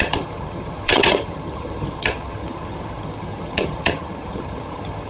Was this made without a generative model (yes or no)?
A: no